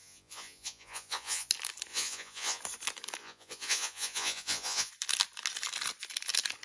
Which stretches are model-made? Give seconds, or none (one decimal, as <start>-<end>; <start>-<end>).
0.0-1.5; 1.9-2.6; 3.2-4.9